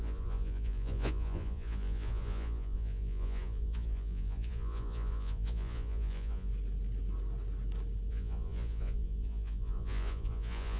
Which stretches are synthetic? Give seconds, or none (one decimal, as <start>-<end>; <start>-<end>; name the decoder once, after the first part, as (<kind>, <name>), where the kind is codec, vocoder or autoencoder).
0.0-6.5 (vocoder, Vocos); 8.1-10.8